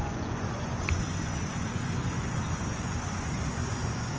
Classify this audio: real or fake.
fake